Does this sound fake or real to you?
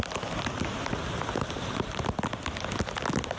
real